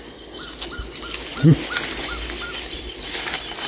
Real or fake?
real